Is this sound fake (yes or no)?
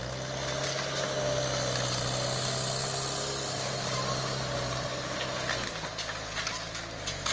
no